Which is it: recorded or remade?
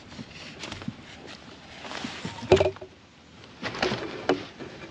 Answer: recorded